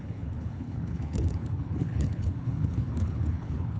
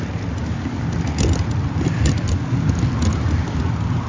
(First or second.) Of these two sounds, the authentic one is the second